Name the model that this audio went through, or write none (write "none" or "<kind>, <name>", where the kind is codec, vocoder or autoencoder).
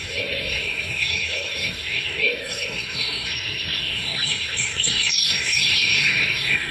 codec, SNAC